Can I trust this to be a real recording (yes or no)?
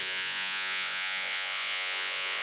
no